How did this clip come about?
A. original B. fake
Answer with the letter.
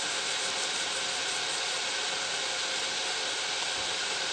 A